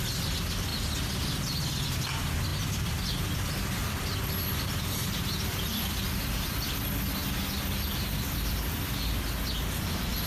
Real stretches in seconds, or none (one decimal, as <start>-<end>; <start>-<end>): 0.0-2.5; 6.8-10.3